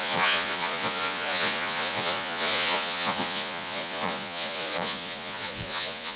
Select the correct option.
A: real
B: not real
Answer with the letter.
B